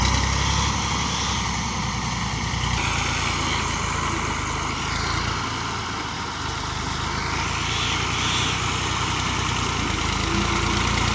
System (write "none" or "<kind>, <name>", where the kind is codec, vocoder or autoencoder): none